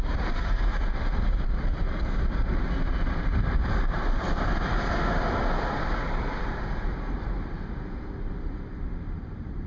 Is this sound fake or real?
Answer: fake